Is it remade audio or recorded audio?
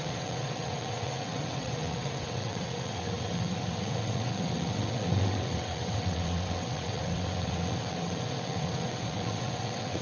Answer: remade